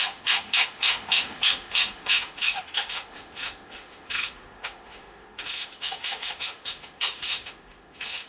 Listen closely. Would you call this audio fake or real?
fake